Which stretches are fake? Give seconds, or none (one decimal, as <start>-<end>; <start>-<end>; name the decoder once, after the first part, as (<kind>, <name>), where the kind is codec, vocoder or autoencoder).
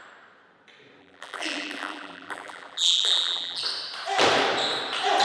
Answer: 1.0-3.6 (vocoder, BigVGAN v2)